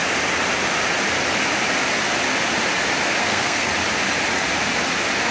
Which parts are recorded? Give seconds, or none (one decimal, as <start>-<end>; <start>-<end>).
0.0-3.2; 3.7-5.3

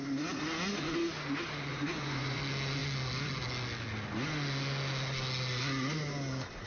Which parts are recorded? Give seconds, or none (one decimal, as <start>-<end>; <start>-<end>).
0.0-1.7; 2.4-6.7